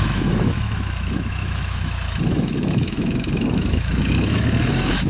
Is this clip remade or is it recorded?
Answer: remade